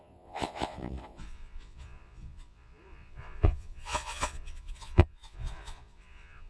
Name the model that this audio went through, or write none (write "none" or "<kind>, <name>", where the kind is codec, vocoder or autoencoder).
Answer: vocoder, Vocos